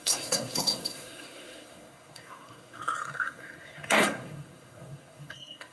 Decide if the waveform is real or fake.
fake